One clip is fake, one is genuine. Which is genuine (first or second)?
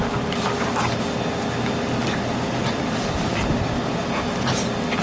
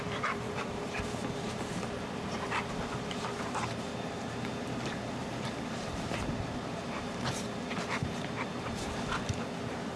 first